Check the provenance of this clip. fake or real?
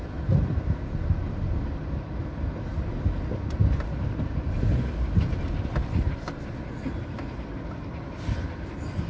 real